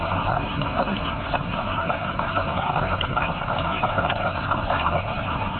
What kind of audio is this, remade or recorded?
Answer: remade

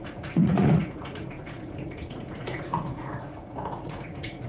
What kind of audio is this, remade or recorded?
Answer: remade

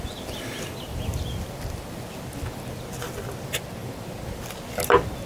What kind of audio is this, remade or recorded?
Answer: recorded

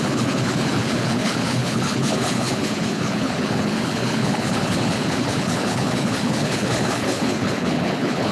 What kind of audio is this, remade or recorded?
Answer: remade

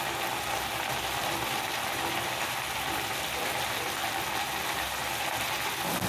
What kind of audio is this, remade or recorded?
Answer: recorded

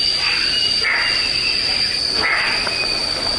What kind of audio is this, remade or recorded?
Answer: recorded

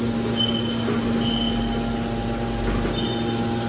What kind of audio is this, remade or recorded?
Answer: recorded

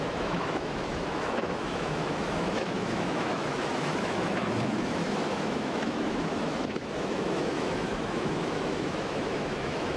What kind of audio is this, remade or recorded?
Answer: remade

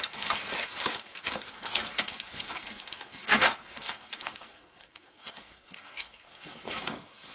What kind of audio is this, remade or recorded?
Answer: remade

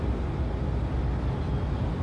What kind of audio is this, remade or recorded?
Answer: recorded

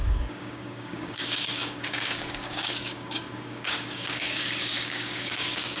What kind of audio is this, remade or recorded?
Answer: remade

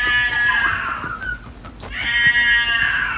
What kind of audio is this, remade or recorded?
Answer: recorded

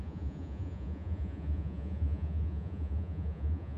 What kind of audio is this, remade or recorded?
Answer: remade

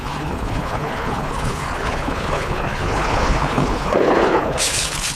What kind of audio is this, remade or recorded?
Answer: remade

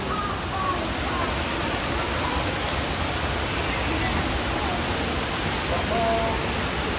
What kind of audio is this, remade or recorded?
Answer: recorded